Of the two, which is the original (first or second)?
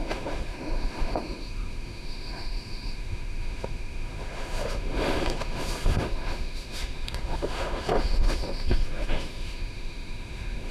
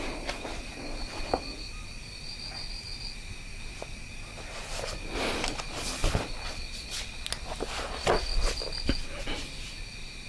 second